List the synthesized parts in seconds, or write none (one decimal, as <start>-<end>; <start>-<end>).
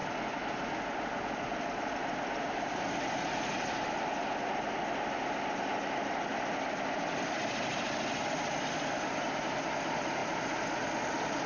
none